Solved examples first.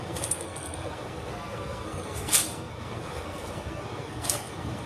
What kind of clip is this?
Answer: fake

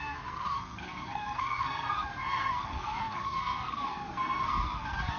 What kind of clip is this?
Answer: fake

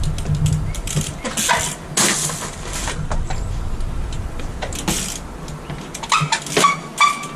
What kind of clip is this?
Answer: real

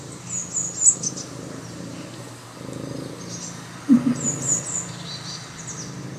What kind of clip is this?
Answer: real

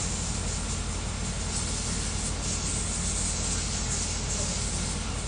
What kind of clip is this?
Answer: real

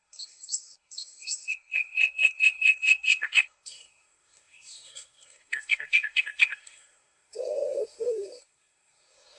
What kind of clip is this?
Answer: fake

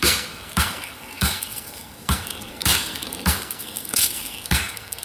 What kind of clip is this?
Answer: fake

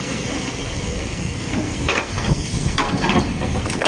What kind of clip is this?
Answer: fake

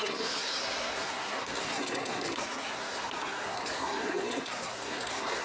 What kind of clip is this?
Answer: fake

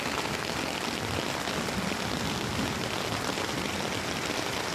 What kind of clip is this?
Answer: real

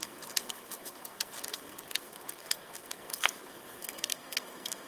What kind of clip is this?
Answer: fake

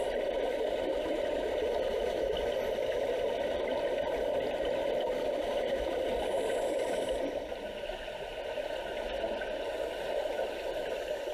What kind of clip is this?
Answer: real